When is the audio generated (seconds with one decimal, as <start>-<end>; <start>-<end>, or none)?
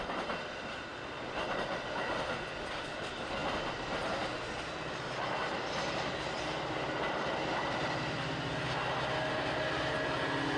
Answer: none